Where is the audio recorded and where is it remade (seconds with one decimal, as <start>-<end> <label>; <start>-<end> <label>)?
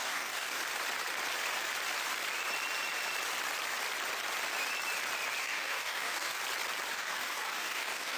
0.0-0.6 remade; 0.6-5.4 recorded; 5.4-6.4 remade; 6.4-6.9 recorded; 6.9-8.2 remade